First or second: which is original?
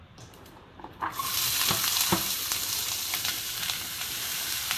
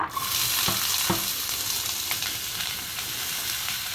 second